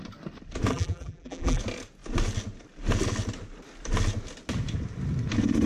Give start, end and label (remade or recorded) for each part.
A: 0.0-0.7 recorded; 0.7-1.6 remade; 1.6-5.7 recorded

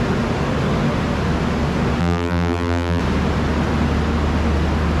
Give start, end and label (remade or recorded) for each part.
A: 0.0-2.0 recorded; 2.0-3.0 remade; 3.0-5.0 recorded

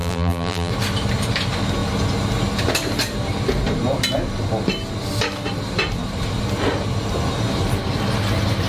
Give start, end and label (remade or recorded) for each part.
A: 0.0-0.7 remade; 0.7-8.7 recorded

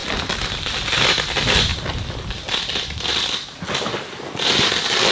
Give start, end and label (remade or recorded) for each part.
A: 0.0-5.1 recorded

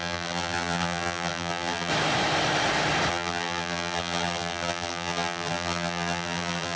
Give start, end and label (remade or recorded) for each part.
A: 0.0-1.9 remade; 1.9-3.1 recorded; 3.1-6.8 remade